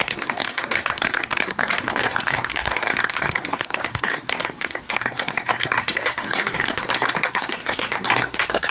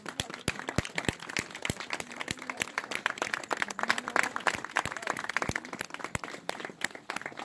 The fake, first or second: first